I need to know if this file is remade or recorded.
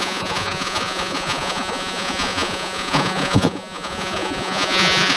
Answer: remade